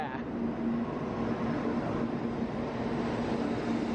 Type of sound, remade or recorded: recorded